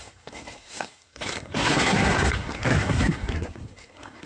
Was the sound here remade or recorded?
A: remade